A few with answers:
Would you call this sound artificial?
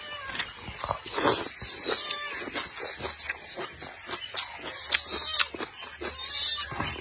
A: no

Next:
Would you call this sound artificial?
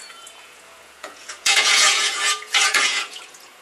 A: yes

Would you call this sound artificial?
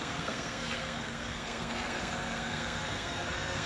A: yes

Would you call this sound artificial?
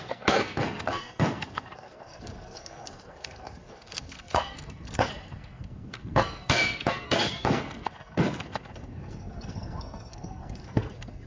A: yes